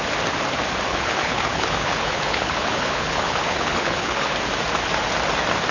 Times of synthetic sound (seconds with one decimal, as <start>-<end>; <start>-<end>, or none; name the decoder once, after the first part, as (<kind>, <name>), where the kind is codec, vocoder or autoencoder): 0.9-4.3 (codec, HILCodec)